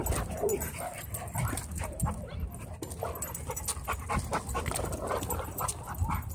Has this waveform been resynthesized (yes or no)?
no